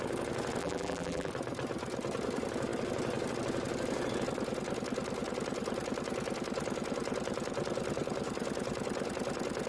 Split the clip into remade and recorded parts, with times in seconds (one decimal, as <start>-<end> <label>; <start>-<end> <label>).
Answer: 0.0-0.6 recorded; 0.6-1.3 remade; 1.3-9.7 recorded